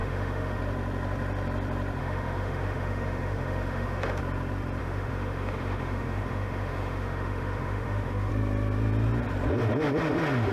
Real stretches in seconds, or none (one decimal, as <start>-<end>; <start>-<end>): 0.6-2.0; 4.2-4.8; 8.3-10.5